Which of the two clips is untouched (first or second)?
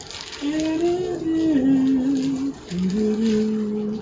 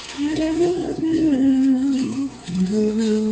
first